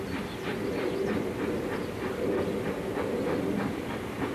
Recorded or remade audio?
recorded